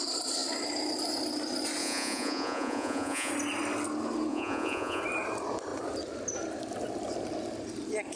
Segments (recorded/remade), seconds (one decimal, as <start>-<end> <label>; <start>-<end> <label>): 0.0-1.8 recorded; 1.8-3.3 remade; 3.3-4.3 recorded; 4.3-5.0 remade; 5.0-8.2 recorded